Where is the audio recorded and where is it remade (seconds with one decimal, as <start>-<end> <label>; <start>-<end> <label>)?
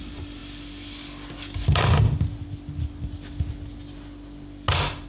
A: 0.0-5.1 recorded